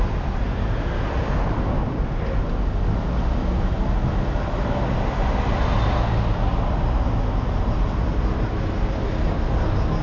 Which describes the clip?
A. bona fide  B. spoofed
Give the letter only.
A